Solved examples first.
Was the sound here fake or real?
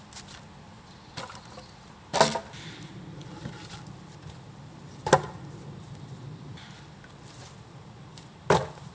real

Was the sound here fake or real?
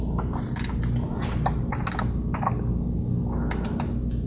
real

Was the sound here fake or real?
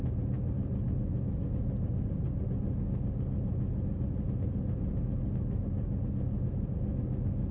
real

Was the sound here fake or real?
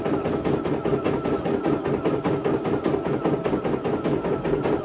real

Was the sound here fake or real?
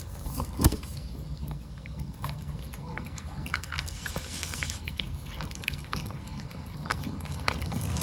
fake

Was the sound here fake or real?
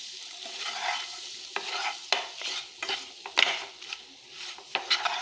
real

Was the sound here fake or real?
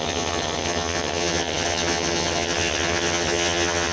fake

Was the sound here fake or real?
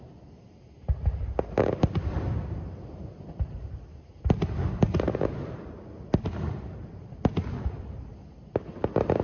real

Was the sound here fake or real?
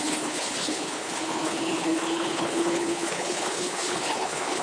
fake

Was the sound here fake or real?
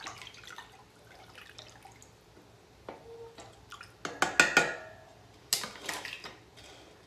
real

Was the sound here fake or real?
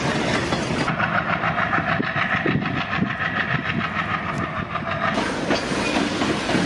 real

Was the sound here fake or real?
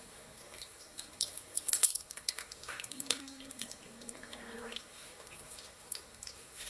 fake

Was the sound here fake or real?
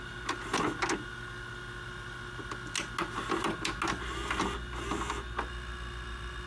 real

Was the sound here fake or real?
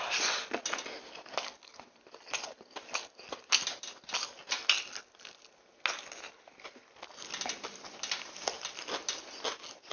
real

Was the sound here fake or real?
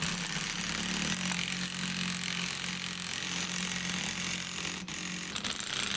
real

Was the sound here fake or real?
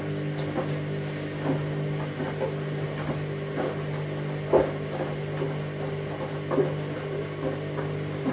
real